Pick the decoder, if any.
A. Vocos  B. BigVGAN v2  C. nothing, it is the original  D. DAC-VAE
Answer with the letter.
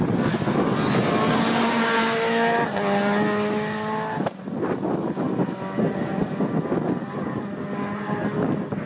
C